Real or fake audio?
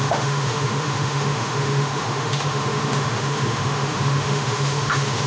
fake